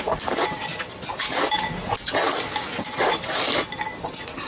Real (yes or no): yes